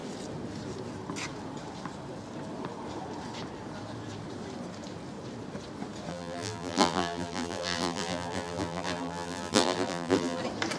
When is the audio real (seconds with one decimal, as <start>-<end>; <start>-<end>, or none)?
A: 0.0-6.1; 10.4-10.8